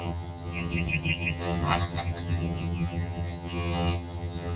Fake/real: fake